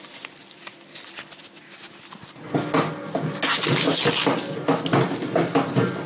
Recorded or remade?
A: recorded